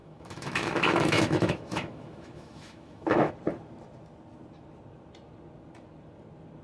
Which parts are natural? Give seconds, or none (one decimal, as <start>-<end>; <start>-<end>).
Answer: 3.3-6.6